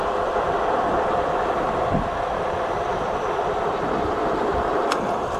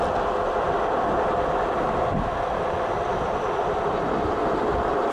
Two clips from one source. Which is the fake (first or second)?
first